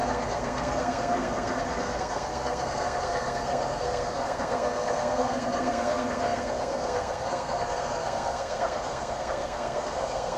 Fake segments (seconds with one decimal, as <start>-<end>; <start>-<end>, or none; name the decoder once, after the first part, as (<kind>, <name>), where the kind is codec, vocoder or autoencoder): 0.0-10.4 (codec, SNAC)